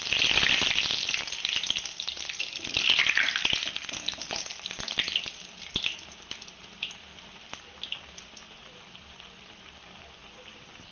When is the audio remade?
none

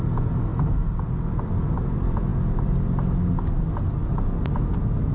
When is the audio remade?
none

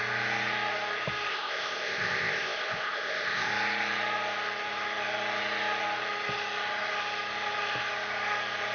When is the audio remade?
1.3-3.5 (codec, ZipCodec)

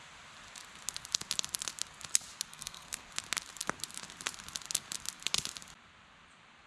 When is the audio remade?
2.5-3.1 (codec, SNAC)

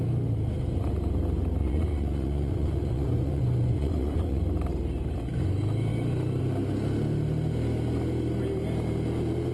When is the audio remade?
1.6-4.4 (vocoder, Vocos)

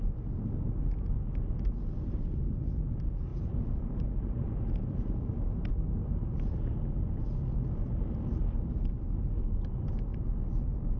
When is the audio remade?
3.3-6.4 (vocoder, BigVGAN v2); 8.4-9.3